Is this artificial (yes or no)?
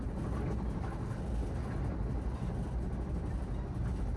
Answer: no